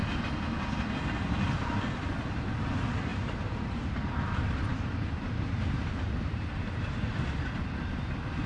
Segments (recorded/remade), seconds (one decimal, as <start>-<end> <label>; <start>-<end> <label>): 0.0-3.1 recorded; 3.1-7.5 remade; 7.5-8.5 recorded